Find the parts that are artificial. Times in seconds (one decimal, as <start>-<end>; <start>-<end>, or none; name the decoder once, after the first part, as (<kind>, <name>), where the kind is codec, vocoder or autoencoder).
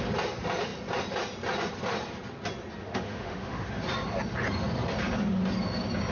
2.8-3.7 (autoencoder, DAC-VAE)